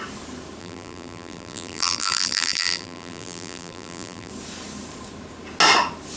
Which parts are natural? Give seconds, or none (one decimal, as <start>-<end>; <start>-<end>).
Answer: 0.0-0.6; 4.3-6.2